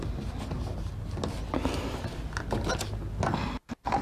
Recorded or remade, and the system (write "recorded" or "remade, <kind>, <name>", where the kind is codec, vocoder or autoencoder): recorded